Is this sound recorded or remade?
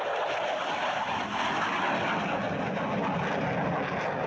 recorded